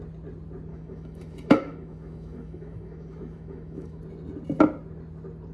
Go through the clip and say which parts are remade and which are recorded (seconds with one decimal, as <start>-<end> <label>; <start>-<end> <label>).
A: 0.0-0.7 recorded; 0.7-4.0 remade; 4.0-5.5 recorded